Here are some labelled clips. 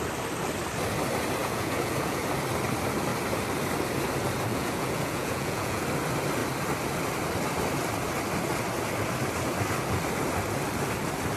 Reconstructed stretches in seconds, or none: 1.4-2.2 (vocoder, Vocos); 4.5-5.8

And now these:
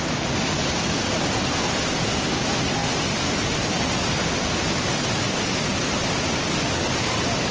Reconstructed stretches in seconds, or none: none